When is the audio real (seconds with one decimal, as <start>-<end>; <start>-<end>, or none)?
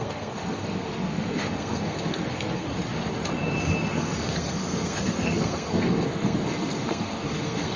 2.7-3.9